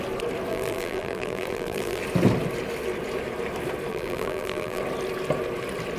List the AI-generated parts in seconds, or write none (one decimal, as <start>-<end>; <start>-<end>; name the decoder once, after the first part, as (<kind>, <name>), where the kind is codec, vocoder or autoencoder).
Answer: 0.5-2.0 (vocoder, BigVGAN v2); 3.9-4.8